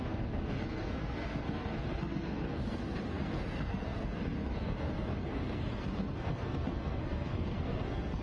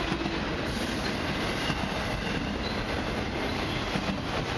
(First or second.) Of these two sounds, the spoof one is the first